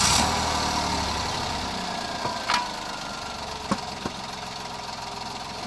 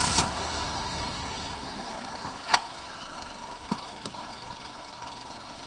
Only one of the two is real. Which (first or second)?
first